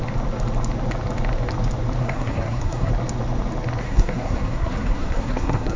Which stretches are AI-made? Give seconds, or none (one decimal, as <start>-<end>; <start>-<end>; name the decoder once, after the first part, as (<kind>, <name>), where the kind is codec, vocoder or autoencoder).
2.0-2.9 (codec, SNAC); 3.8-5.8